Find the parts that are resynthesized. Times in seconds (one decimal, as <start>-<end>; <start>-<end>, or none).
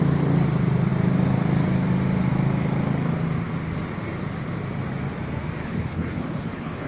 5.6-6.9